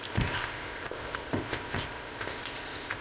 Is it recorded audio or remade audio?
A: remade